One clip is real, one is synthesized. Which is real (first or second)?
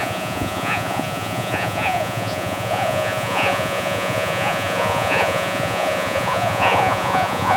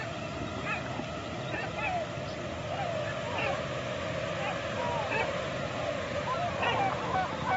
second